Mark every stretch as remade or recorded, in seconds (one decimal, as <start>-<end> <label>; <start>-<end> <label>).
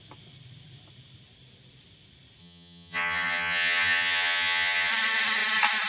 0.0-2.4 recorded; 2.4-4.9 remade; 4.9-5.9 recorded